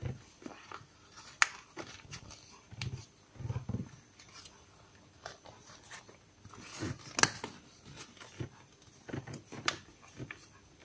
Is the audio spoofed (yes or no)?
no